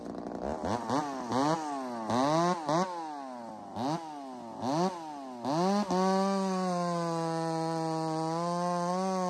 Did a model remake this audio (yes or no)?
no